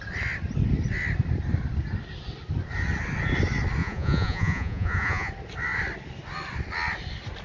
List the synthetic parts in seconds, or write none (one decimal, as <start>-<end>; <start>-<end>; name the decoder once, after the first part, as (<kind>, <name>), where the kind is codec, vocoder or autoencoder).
3.8-5.3 (vocoder, Vocos)